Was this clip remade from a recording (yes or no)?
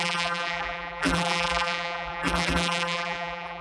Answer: yes